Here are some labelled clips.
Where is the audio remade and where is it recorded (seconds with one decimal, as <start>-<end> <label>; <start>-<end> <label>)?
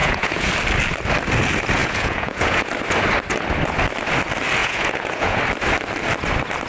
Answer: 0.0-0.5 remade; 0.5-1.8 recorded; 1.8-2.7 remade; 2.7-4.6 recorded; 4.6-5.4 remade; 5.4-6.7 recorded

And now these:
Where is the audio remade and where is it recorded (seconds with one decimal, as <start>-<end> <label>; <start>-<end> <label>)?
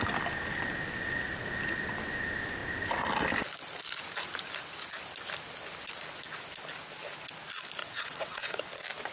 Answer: 0.0-7.8 recorded; 7.8-8.7 remade; 8.7-9.1 recorded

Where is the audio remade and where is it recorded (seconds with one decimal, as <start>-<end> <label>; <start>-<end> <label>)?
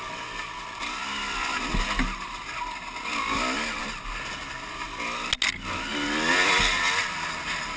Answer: 0.0-7.8 recorded